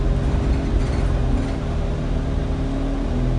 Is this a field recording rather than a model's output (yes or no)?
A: yes